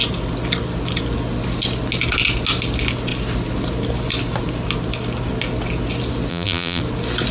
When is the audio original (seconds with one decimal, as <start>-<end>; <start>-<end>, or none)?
0.0-6.3; 6.8-7.3